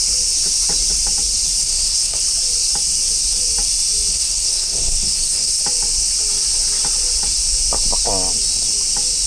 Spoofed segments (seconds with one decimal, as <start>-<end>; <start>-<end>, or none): 1.6-2.2; 4.1-5.6